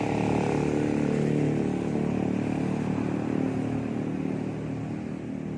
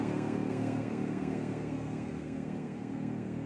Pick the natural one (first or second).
first